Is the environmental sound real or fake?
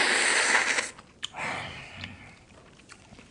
real